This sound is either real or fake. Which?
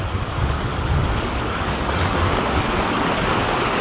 fake